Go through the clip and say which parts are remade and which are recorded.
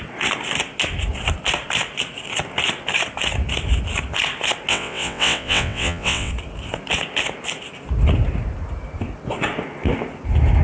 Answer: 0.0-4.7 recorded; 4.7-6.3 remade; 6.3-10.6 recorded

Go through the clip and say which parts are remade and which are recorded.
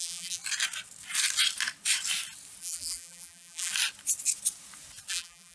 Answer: 0.0-0.4 remade; 0.4-2.6 recorded; 2.6-3.7 remade; 3.7-5.1 recorded; 5.1-5.5 remade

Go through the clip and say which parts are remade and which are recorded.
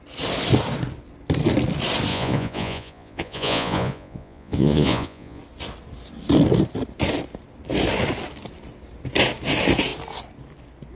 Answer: 0.0-2.1 recorded; 2.1-5.4 remade; 5.4-11.0 recorded